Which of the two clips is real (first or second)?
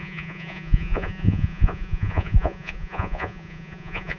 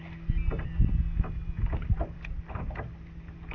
second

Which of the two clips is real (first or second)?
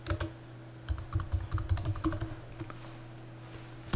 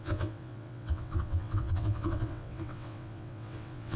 first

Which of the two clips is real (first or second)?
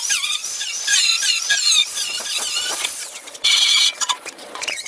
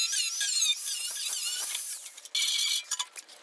second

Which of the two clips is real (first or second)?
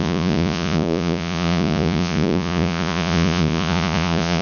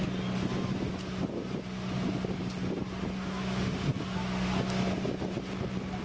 second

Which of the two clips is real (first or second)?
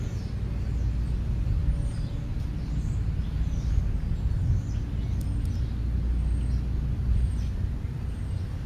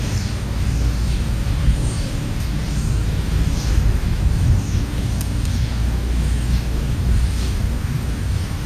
first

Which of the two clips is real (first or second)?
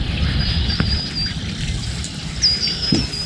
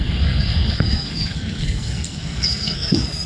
first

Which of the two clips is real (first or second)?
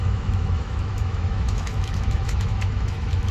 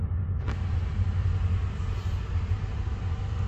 second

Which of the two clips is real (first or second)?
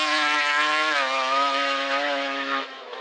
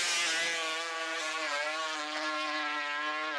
second